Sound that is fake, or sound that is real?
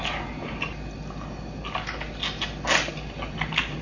real